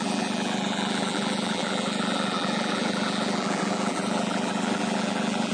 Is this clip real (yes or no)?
no